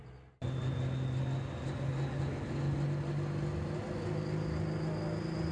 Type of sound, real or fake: real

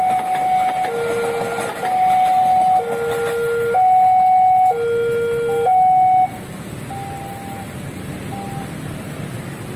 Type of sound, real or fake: real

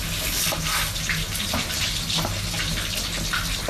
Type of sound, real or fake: real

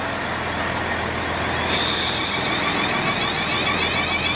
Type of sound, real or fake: real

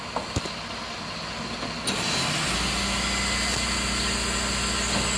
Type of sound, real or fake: real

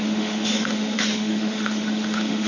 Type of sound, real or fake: fake